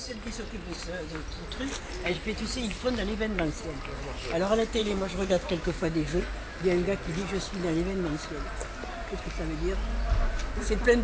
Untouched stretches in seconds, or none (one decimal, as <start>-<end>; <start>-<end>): 0.0-4.8; 6.2-11.0